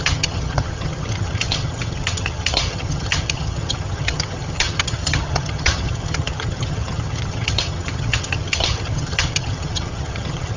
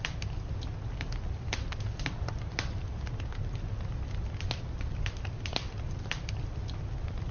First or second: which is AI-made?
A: first